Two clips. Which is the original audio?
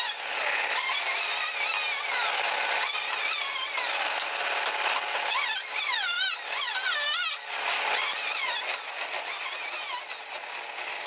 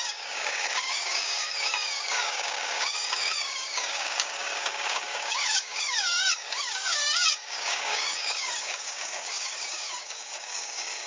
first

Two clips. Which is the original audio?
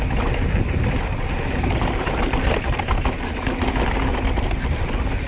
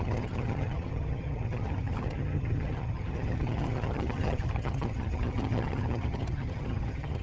first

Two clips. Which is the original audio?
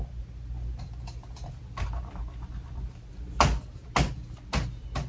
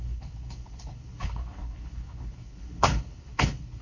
first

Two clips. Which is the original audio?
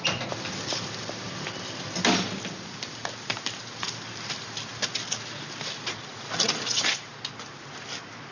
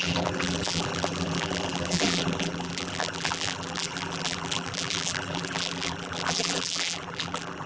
first